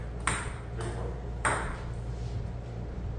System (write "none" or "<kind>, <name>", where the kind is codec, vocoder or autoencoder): none